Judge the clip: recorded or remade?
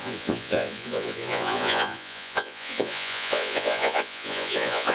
remade